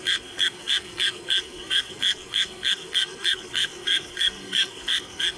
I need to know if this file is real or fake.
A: fake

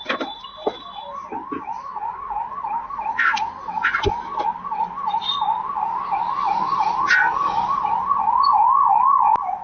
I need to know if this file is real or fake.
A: real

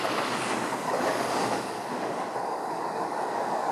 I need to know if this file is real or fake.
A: fake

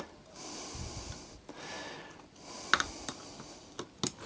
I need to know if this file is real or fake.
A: real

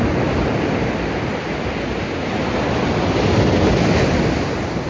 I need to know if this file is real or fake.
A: real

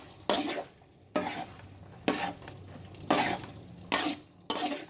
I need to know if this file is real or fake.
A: real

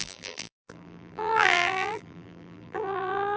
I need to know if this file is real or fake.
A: fake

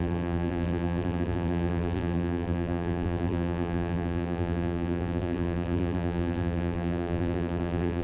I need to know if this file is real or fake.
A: fake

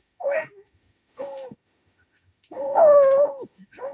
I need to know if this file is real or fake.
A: fake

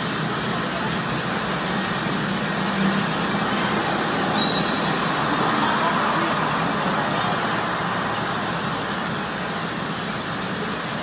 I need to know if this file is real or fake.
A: real